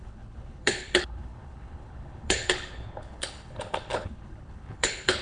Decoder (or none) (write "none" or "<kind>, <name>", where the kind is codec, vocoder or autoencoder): codec, HILCodec